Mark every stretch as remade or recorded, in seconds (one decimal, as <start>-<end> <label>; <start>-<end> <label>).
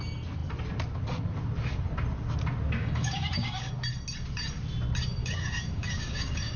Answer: 0.0-2.8 recorded; 2.8-3.7 remade; 3.7-5.2 recorded; 5.2-6.6 remade